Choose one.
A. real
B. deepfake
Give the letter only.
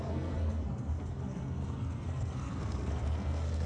B